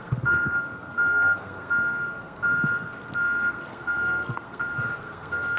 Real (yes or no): no